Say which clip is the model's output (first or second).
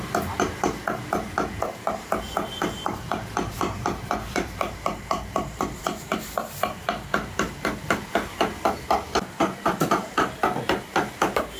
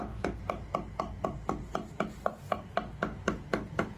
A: first